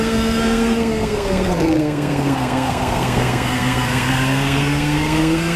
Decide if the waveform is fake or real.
fake